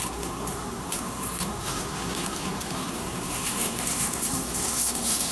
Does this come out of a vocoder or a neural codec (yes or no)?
yes